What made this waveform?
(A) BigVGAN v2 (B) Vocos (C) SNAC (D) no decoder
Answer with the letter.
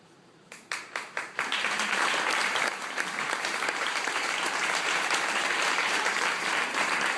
A